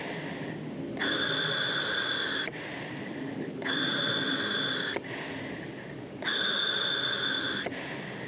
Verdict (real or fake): real